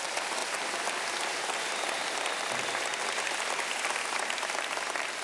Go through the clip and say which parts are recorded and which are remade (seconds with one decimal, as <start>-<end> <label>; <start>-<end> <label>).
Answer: 0.0-0.4 remade; 0.4-1.4 recorded; 1.4-5.2 remade